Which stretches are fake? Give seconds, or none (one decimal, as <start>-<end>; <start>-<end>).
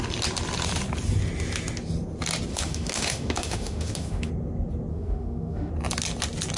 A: 2.5-4.3; 4.9-5.7